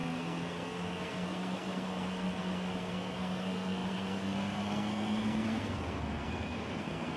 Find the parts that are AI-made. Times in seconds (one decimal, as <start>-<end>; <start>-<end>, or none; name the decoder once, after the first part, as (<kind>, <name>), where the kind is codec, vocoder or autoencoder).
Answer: 0.0-7.2 (codec, SNAC)